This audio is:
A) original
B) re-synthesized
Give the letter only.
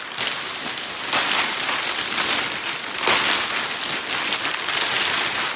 A